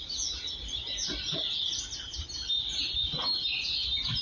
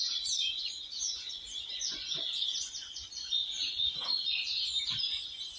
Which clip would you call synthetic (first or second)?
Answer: second